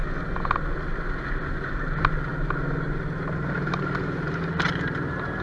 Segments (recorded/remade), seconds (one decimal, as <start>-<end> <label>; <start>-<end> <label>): 0.0-1.0 recorded; 1.0-2.3 remade; 2.3-2.9 recorded; 2.9-5.4 remade